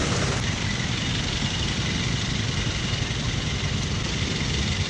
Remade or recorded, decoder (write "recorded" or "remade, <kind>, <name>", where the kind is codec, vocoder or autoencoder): remade, vocoder, BigVGAN v2